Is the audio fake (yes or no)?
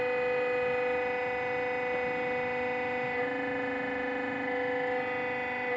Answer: no